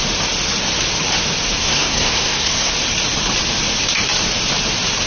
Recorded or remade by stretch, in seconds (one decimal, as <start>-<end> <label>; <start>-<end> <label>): 0.0-1.6 recorded; 1.6-2.7 remade; 2.7-5.1 recorded